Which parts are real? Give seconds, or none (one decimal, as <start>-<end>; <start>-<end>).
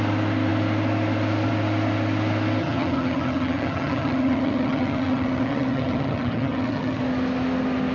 0.0-2.6; 7.0-7.9